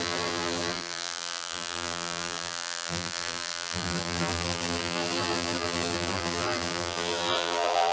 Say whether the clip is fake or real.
fake